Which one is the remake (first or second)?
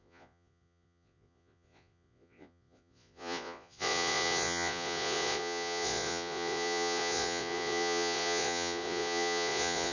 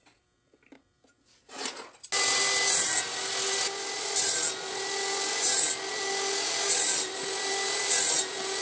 first